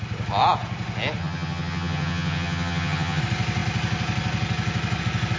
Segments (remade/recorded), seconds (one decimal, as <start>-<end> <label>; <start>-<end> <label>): 0.0-1.2 recorded; 1.2-3.2 remade; 3.2-5.4 recorded